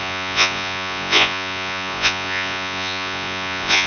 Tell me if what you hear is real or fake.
fake